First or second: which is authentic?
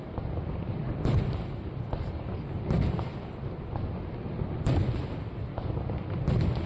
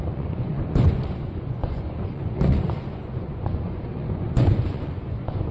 first